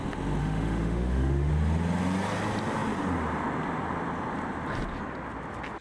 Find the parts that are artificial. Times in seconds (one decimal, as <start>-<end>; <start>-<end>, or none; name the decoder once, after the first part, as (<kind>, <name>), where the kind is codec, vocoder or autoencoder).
0.4-1.5 (autoencoder, DAC-VAE)